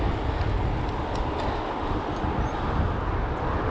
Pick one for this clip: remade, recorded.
recorded